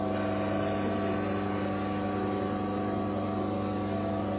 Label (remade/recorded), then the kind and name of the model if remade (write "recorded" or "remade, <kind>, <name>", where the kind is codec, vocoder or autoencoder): recorded